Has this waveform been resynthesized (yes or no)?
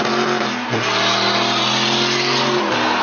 no